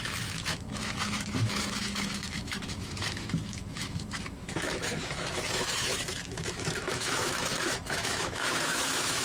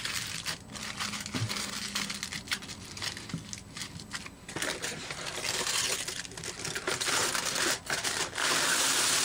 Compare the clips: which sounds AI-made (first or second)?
first